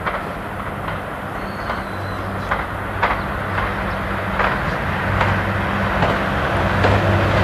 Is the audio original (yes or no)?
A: yes